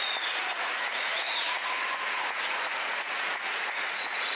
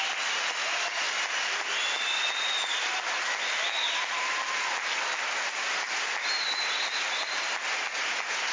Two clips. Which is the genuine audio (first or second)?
second